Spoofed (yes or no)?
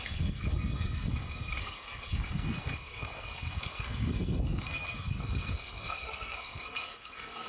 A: yes